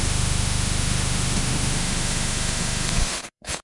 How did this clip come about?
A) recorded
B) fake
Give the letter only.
B